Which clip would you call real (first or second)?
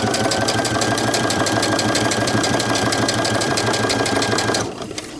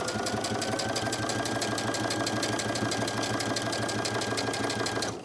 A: second